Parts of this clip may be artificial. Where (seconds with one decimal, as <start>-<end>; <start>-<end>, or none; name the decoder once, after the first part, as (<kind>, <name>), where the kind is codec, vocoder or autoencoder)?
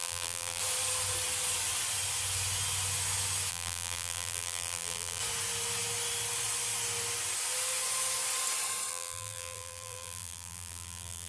0.0-0.6 (vocoder, BigVGAN v2); 3.5-5.2; 8.9-11.3